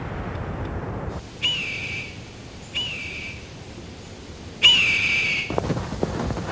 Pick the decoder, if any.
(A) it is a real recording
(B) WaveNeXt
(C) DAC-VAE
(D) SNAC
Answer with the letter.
A